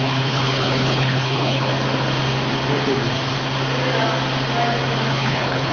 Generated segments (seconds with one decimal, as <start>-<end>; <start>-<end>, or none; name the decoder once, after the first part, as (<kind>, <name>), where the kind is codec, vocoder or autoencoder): 0.0-1.7 (codec, HILCodec); 5.1-5.7